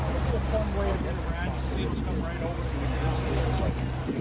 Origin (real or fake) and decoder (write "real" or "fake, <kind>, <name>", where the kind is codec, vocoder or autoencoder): real